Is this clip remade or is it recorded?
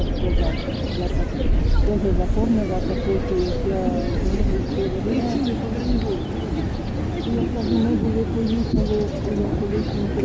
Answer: recorded